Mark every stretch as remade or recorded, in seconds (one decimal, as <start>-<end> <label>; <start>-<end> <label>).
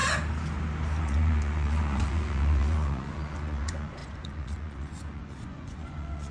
0.0-1.0 recorded; 1.0-6.3 remade